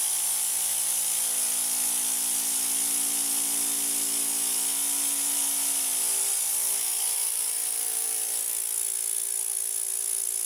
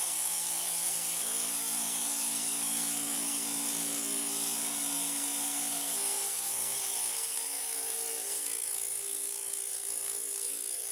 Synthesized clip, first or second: second